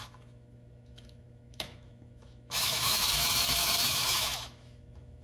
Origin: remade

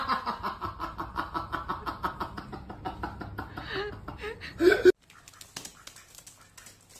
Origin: recorded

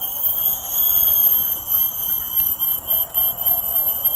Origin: recorded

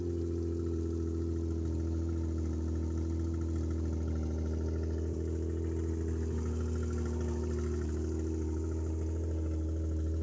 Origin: recorded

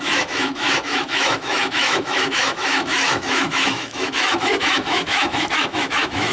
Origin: remade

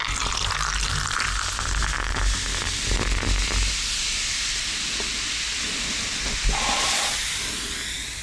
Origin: recorded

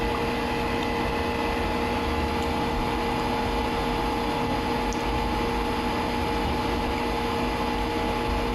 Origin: recorded